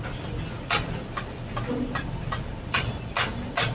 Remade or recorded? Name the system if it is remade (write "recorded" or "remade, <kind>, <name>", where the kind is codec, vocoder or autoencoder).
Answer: recorded